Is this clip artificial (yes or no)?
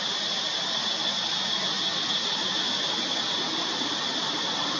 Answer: no